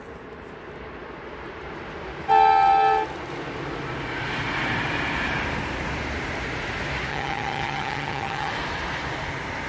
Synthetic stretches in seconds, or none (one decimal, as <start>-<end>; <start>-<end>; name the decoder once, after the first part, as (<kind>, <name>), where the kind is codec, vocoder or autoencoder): 7.1-8.5 (vocoder, HiFi-GAN)